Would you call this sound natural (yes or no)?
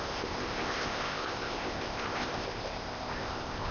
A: no